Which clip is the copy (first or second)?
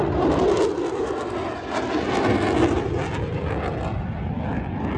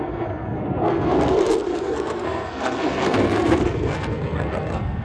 second